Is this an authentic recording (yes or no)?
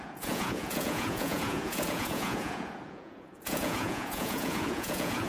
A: no